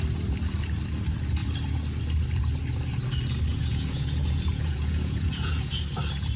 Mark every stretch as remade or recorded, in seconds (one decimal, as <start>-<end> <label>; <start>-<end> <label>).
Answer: 0.0-3.5 recorded; 3.5-5.8 remade; 5.8-6.4 recorded